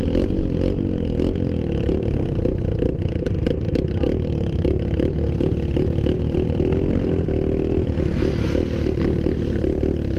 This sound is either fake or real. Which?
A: real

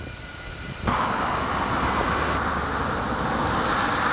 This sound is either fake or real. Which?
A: real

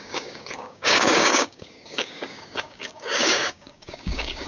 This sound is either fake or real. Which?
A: fake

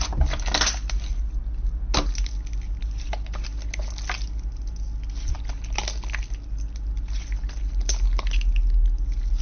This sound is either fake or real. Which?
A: real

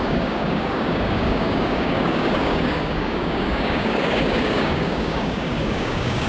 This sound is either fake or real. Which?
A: fake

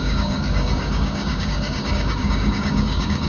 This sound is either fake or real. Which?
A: fake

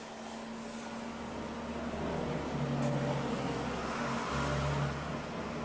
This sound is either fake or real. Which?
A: real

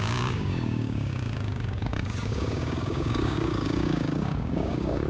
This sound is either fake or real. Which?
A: fake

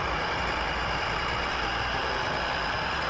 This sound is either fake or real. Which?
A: real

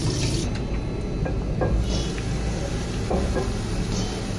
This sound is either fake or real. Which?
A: real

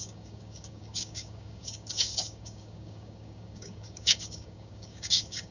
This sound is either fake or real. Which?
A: fake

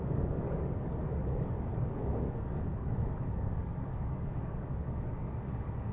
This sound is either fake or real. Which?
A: fake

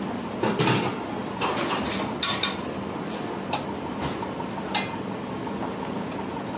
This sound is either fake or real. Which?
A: real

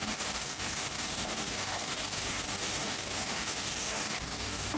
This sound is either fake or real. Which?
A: fake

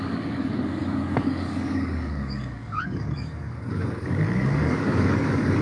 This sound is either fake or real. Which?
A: fake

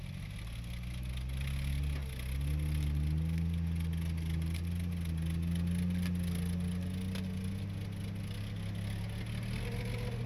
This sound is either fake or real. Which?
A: real